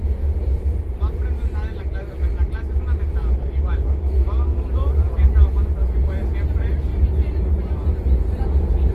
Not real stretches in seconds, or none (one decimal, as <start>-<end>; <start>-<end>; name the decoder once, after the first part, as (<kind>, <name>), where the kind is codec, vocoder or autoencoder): 4.5-5.1 (vocoder, BigVGAN v2)